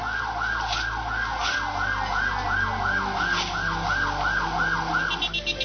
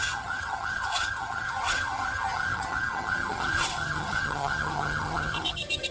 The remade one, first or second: second